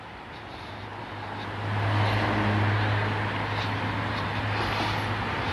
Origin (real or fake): real